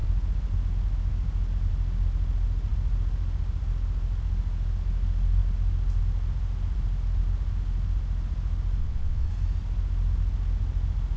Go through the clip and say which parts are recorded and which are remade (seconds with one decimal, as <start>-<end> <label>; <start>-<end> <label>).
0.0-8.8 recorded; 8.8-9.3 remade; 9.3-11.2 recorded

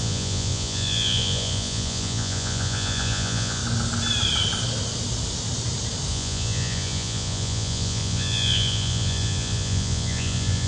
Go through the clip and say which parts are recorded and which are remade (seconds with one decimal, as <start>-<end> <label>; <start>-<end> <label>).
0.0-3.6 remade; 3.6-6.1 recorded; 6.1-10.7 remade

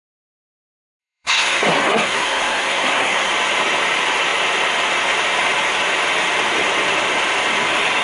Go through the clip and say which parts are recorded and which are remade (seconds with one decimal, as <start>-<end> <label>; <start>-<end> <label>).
0.0-1.0 recorded; 1.0-3.3 remade; 3.3-8.0 recorded

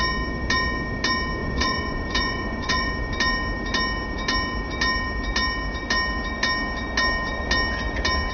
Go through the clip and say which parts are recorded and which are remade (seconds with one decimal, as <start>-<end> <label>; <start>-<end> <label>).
0.0-1.4 recorded; 1.4-2.9 remade; 2.9-8.3 recorded

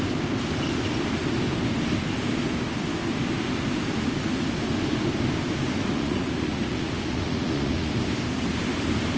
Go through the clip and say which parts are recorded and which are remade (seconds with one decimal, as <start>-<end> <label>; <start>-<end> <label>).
0.0-5.8 recorded; 5.8-7.9 remade; 7.9-9.2 recorded

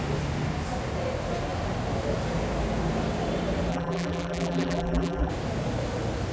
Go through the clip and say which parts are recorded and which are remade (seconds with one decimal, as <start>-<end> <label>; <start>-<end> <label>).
0.0-3.7 recorded; 3.7-5.3 remade; 5.3-6.3 recorded

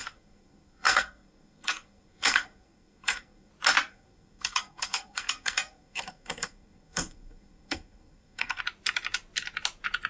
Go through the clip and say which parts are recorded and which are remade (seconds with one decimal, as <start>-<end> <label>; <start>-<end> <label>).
0.0-3.5 remade; 3.5-3.9 recorded; 3.9-8.6 remade; 8.6-10.1 recorded

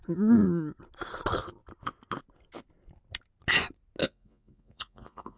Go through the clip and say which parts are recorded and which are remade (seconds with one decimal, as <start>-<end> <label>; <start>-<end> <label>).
0.0-4.0 recorded; 4.0-5.4 remade